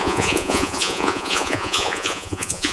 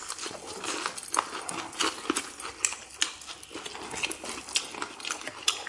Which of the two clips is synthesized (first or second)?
first